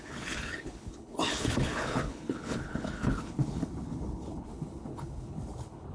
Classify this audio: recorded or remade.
remade